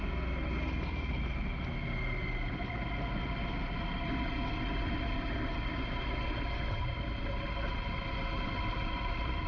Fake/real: real